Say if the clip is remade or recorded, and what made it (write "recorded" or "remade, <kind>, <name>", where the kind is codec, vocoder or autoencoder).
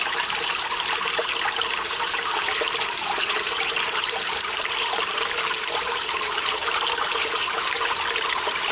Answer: remade, vocoder, BigVGAN v2